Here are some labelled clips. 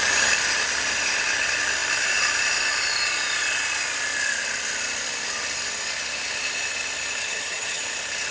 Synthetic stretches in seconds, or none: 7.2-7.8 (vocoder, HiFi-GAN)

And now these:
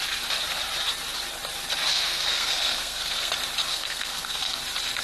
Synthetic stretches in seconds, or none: 1.9-3.3 (codec, SNAC); 3.7-4.6

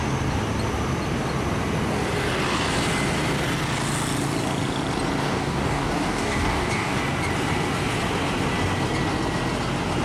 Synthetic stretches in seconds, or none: 5.2-7.0 (codec, DAC)

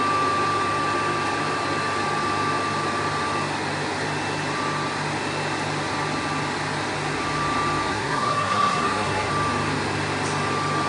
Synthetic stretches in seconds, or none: 7.9-9.3 (codec, SNAC)

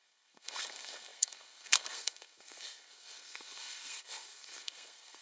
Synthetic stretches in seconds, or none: 0.0-5.2 (codec, SNAC)

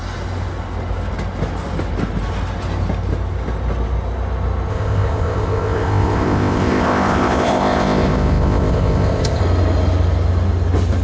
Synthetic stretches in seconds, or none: 4.7-9.4 (codec, ZipCodec)

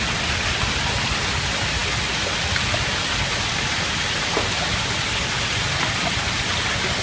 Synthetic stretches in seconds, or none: none

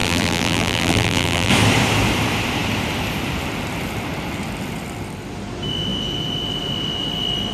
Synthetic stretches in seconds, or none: 0.0-1.5 (vocoder, BigVGAN v2)